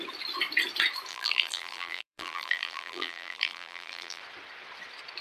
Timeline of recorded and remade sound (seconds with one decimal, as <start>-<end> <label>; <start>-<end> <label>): 0.0-1.1 recorded; 1.1-4.2 remade; 4.2-5.2 recorded